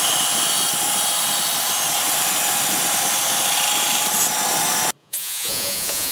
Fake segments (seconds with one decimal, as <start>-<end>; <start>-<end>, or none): 5.0-6.1